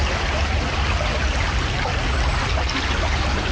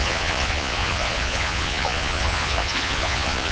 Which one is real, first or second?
first